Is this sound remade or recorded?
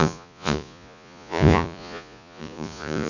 remade